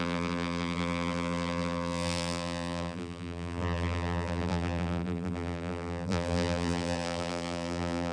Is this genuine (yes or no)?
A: no